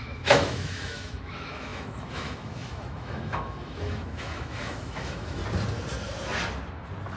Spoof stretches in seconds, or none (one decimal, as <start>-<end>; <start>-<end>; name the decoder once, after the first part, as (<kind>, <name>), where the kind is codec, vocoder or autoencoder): 0.0-5.4 (autoencoder, DAC-VAE)